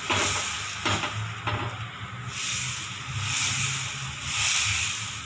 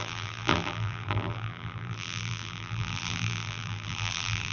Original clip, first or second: first